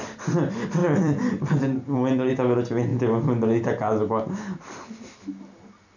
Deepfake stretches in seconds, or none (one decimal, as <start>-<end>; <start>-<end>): 0.8-2.3